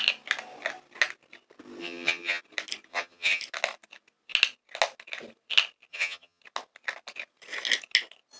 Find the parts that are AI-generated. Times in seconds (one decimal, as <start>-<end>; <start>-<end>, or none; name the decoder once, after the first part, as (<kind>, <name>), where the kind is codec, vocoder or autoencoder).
1.8-2.4 (vocoder, HiFi-GAN); 2.9-3.4; 5.9-6.4